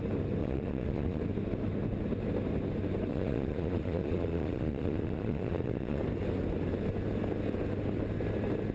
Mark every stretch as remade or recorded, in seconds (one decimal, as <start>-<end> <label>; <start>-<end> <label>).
0.0-0.4 recorded; 0.4-1.2 remade; 1.2-3.1 recorded; 3.1-6.0 remade; 6.0-8.7 recorded